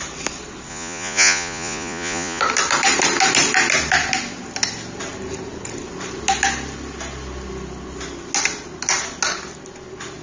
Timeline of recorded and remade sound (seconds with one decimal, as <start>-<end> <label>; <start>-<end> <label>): 0.0-0.7 recorded; 0.7-2.4 remade; 2.4-10.2 recorded